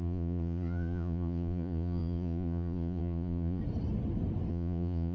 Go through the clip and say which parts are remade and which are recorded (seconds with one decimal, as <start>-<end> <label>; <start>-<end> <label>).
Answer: 0.0-3.6 remade; 3.6-4.5 recorded; 4.5-5.1 remade